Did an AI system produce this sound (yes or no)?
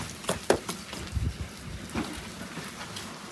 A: no